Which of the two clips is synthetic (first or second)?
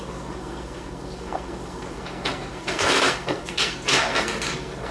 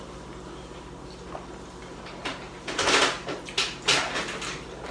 first